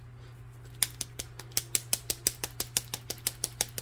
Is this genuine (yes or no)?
yes